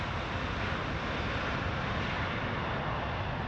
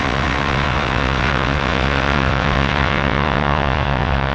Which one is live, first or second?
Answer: first